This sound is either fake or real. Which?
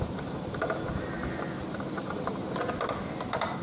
real